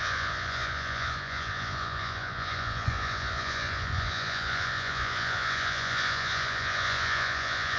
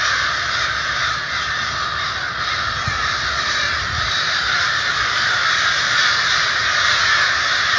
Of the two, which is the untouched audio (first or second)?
second